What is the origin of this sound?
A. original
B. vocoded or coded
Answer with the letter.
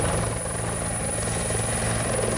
A